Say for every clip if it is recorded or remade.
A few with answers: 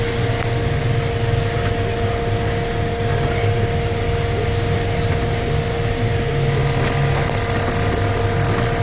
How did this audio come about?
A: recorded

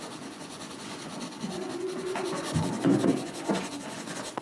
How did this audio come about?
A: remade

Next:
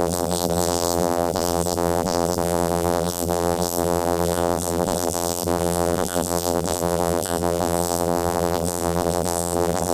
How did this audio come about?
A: remade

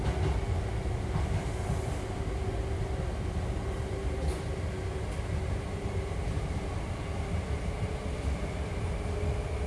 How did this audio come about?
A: recorded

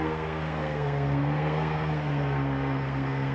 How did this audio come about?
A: remade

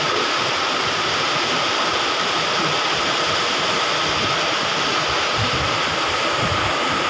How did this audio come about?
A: recorded